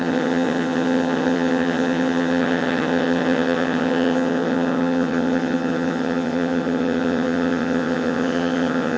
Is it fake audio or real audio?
fake